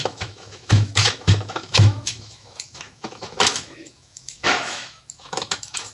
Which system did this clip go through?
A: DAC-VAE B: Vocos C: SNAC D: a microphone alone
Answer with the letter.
A